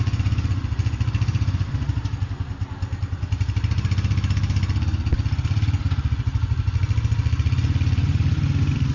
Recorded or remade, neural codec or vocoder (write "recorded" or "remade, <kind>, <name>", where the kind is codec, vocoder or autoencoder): recorded